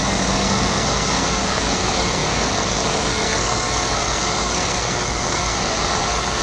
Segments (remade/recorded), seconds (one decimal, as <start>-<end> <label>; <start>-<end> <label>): 0.0-6.4 remade